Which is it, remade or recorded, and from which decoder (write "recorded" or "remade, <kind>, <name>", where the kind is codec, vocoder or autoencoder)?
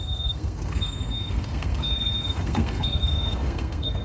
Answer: remade, codec, SNAC